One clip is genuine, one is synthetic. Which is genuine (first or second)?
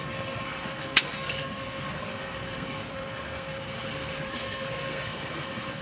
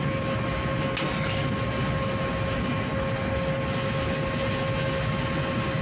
second